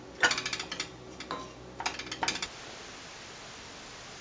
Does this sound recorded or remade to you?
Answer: recorded